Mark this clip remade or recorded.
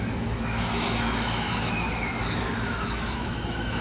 remade